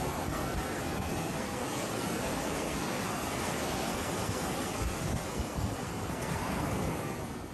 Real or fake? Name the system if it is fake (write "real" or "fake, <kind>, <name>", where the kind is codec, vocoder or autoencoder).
fake, codec, SNAC